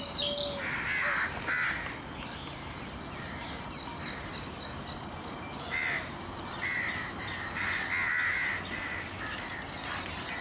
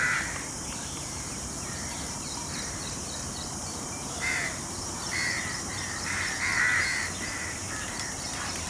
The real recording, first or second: first